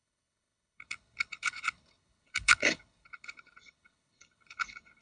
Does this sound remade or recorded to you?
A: remade